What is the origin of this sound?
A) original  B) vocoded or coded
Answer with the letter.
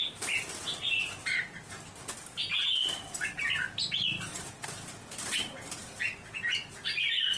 A